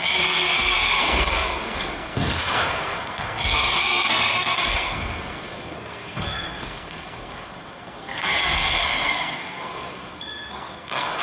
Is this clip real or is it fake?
fake